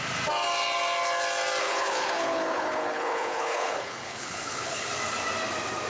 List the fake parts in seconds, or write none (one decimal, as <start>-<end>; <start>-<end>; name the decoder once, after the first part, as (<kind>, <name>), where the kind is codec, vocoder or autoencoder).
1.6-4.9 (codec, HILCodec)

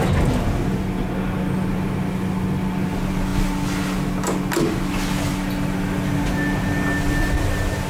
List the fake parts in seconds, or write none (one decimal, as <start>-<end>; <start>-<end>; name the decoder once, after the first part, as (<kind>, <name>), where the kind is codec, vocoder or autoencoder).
none

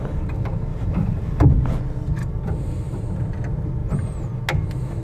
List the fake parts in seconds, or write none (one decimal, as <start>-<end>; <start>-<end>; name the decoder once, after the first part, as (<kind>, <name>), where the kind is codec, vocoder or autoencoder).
0.7-1.7 (vocoder, BigVGAN v2); 2.2-3.0; 3.8-4.4

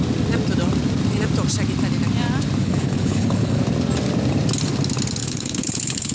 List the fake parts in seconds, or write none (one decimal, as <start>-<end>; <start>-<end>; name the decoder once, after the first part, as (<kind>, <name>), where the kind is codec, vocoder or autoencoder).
2.6-3.6 (codec, HILCodec); 5.2-6.1